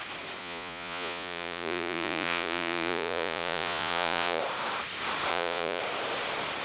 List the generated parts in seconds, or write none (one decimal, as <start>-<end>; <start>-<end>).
0.4-4.4; 5.3-5.8